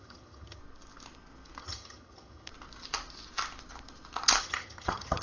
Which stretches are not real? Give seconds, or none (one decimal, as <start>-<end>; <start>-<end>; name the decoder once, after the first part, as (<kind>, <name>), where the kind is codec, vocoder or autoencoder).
0.0-0.6 (vocoder, HiFi-GAN); 1.6-2.5; 4.4-5.2